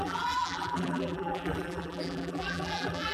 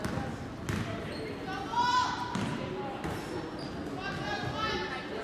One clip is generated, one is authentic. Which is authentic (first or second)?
second